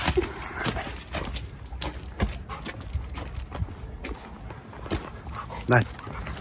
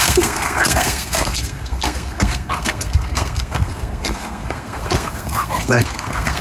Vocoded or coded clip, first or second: second